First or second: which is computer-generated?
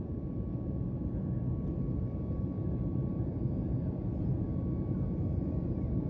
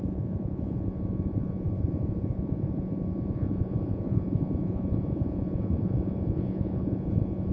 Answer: second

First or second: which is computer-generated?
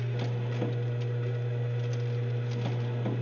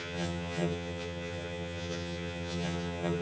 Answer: second